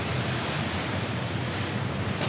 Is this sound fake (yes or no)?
no